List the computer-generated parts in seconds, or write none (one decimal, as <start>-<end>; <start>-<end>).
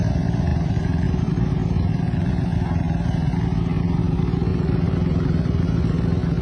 0.5-2.3; 4.5-5.8